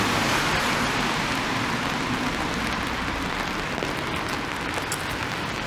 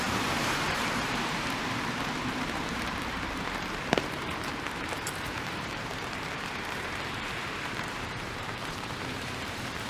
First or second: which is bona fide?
first